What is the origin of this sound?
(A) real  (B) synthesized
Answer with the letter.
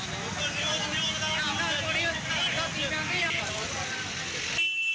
A